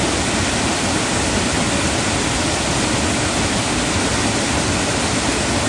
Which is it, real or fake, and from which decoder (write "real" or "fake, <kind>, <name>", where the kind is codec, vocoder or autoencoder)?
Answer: real